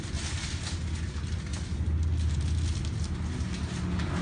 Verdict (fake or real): real